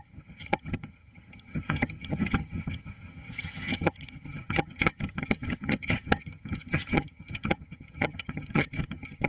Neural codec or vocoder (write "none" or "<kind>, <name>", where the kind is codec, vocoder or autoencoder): vocoder, HiFi-GAN